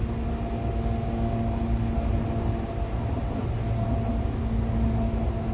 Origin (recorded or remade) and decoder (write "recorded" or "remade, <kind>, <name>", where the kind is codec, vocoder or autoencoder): recorded